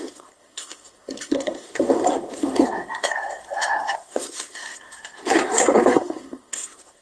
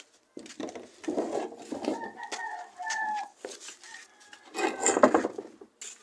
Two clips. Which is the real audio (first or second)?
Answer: second